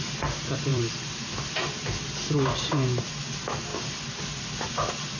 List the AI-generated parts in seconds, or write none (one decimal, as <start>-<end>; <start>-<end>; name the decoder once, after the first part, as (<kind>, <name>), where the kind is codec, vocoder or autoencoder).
0.7-3.1 (vocoder, BigVGAN v2)